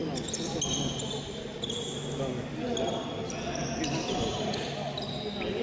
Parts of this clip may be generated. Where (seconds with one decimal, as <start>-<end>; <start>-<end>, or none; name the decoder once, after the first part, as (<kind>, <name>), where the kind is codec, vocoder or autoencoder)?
none